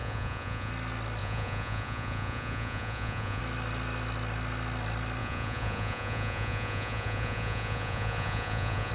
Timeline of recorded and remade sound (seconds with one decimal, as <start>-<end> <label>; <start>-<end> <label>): 0.0-0.7 remade; 0.7-1.2 recorded; 1.2-3.4 remade; 3.4-5.2 recorded; 5.2-8.9 remade